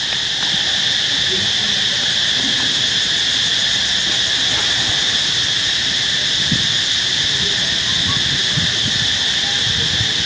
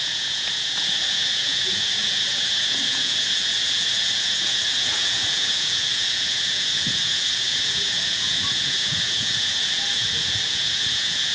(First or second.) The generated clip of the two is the second